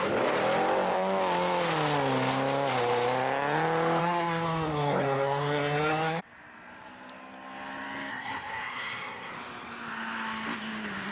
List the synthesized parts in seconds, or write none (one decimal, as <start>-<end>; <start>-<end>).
4.0-6.2; 8.1-9.3